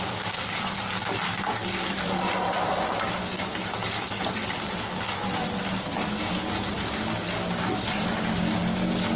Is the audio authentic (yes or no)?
yes